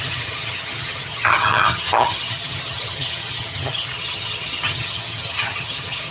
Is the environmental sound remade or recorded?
remade